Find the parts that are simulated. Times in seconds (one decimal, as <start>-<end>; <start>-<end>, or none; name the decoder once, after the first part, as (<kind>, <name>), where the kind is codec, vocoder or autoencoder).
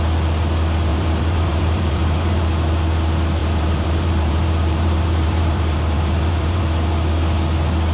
0.9-2.4 (vocoder, BigVGAN v2); 3.4-6.6